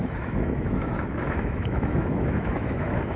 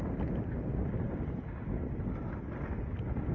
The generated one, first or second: first